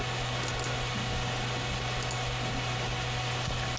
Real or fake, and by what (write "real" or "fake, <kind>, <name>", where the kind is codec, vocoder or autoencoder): real